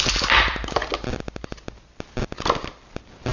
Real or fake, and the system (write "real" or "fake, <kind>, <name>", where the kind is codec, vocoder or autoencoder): real